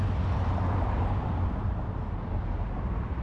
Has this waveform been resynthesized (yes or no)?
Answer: no